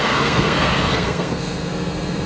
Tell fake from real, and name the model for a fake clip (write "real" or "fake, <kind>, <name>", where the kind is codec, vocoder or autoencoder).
fake, codec, SNAC